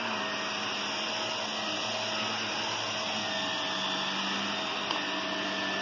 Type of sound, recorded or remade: recorded